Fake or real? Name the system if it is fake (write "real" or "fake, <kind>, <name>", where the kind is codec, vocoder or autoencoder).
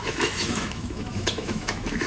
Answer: fake, autoencoder, DAC-VAE